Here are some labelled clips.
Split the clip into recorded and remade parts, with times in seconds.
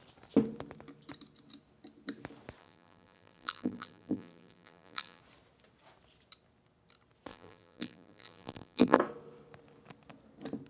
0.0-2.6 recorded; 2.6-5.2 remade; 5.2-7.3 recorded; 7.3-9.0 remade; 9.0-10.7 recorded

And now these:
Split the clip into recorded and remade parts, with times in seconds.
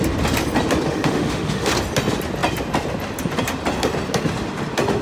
0.0-0.9 recorded; 0.9-1.7 remade; 1.7-5.0 recorded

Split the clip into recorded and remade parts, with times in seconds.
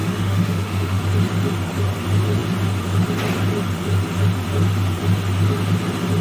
0.0-1.0 remade; 1.0-6.2 recorded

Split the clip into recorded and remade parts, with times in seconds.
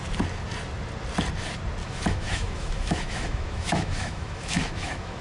0.0-1.8 recorded; 1.8-5.2 remade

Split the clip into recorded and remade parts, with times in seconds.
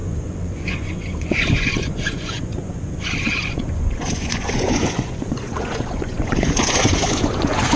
0.0-7.8 remade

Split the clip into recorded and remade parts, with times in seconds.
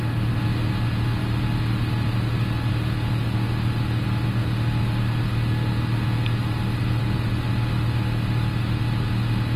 0.0-9.6 recorded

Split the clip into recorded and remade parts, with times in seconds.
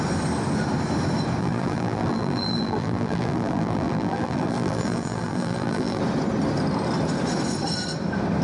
0.0-1.4 recorded; 1.4-6.0 remade; 6.0-8.4 recorded